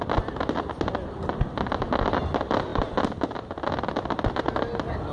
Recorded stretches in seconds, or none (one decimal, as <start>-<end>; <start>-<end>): 0.0-5.1